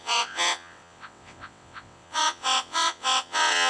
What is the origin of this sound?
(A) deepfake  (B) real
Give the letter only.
A